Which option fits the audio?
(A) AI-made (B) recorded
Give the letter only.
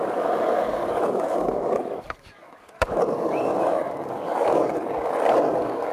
A